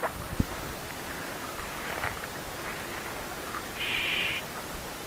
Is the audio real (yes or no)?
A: yes